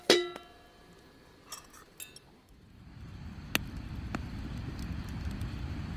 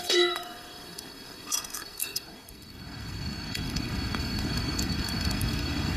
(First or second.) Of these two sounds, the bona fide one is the first